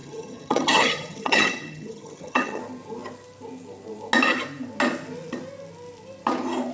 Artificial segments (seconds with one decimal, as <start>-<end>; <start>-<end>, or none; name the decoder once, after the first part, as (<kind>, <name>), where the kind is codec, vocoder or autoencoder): 0.0-2.6 (vocoder, HiFi-GAN)